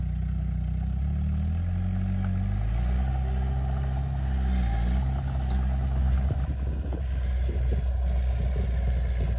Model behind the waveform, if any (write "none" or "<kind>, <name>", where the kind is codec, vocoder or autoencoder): none